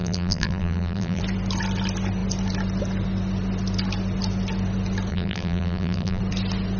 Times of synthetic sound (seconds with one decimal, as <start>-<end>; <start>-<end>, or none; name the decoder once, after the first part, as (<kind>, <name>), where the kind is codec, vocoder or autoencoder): 0.0-1.2 (vocoder, BigVGAN v2); 5.1-6.2